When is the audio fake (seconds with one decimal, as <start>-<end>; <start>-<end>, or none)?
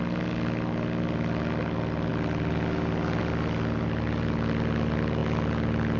none